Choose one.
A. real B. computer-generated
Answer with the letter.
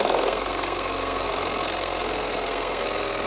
B